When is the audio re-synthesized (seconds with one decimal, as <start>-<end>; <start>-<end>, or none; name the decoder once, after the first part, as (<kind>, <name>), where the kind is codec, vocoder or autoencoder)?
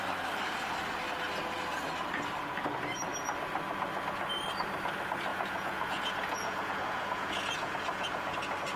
5.3-8.3 (vocoder, Vocos)